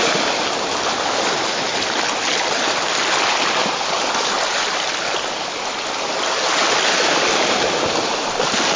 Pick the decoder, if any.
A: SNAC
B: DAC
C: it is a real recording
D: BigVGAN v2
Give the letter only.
C